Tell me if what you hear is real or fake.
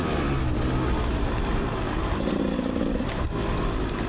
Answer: real